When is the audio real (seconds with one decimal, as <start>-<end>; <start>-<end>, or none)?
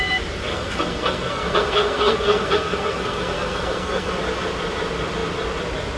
0.0-0.5; 4.1-6.0